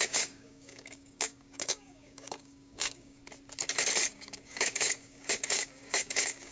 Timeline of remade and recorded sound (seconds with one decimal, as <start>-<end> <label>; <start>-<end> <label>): 0.0-3.2 remade; 3.2-4.1 recorded; 4.1-6.5 remade